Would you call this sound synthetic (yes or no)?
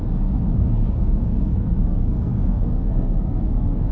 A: yes